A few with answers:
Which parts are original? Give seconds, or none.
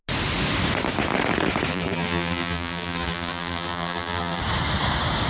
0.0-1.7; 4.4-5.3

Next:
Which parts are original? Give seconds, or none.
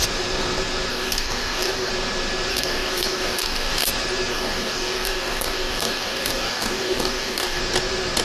0.0-0.9; 1.9-2.5; 3.9-4.3; 7.6-8.2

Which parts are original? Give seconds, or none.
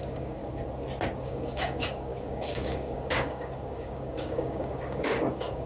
0.4-1.2